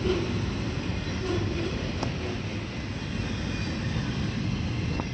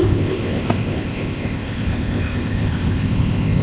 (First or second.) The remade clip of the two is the second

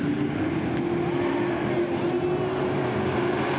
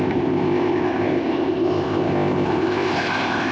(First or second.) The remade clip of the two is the second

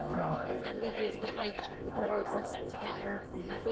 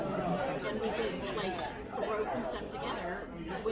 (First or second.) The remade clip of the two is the first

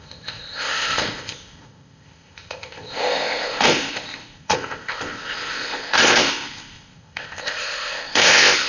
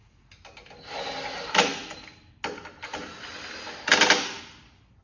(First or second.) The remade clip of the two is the first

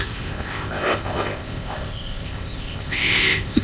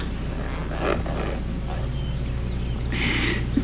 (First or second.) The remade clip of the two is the first